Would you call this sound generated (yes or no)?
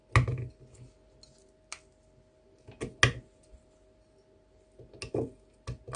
no